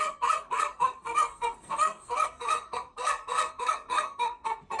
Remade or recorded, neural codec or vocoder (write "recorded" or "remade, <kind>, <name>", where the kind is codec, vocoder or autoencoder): remade, codec, SNAC